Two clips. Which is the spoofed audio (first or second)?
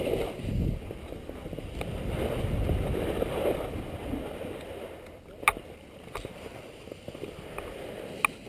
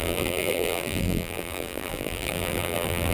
second